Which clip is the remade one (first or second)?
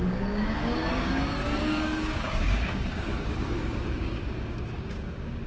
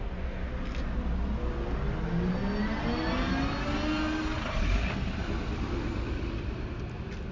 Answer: first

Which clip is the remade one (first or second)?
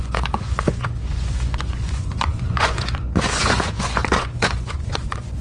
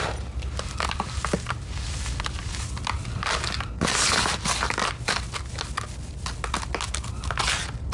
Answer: first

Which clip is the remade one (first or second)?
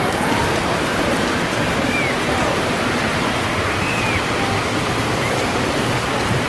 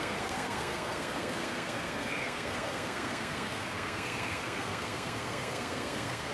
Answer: second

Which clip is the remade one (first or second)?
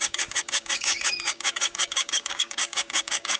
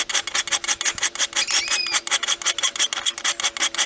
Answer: first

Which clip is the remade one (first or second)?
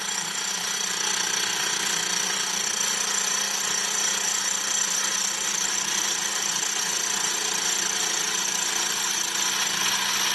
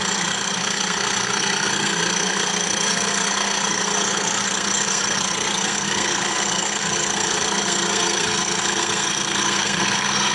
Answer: second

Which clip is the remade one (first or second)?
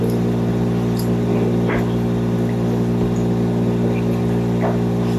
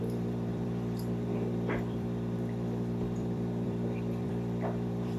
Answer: second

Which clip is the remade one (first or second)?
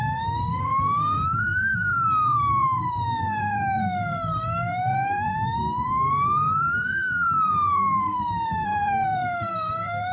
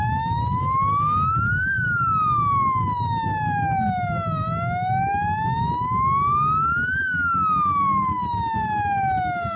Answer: first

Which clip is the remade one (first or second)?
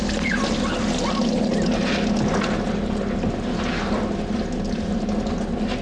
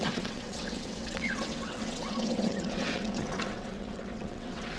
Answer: second